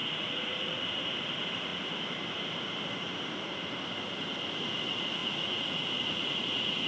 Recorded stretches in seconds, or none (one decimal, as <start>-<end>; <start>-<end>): 0.8-5.2